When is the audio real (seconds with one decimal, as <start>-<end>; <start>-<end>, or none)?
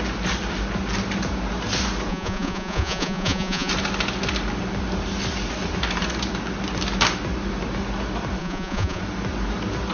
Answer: 0.0-2.1; 3.7-8.4; 9.0-9.9